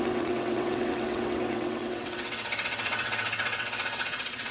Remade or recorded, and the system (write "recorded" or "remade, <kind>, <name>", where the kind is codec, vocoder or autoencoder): remade, vocoder, WaveNeXt